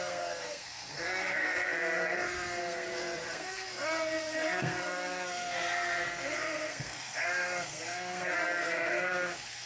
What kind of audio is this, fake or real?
fake